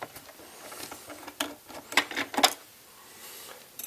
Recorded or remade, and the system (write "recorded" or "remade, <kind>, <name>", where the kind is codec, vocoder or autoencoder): recorded